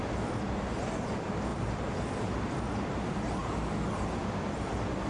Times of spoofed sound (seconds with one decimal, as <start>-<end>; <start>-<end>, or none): 1.5-2.5